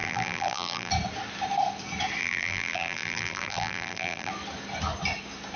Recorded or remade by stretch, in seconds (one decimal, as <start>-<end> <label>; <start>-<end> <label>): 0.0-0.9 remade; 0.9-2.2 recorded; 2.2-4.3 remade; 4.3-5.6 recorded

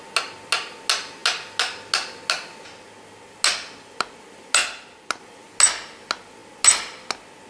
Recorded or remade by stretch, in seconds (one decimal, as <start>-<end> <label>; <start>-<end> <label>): 0.0-7.5 recorded

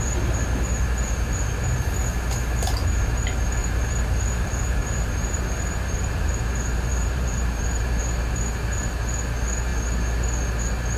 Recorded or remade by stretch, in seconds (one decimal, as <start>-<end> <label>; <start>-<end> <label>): 0.0-3.6 recorded; 3.6-6.5 remade; 6.5-6.9 recorded; 6.9-8.0 remade; 8.0-11.0 recorded